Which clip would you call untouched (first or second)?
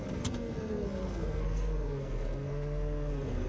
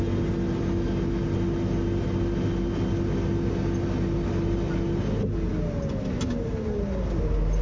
second